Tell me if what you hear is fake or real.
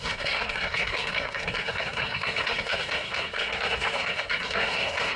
fake